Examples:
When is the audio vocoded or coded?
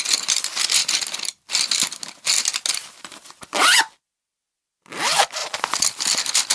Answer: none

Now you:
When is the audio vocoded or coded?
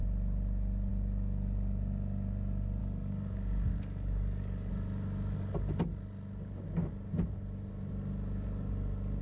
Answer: 2.8-4.7 (codec, DAC)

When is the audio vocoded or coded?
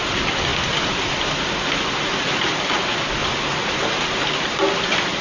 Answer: none